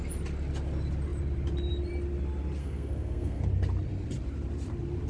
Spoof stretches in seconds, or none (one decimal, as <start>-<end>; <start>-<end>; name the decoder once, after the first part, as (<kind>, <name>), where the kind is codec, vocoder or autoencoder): 2.6-3.4 (codec, SNAC)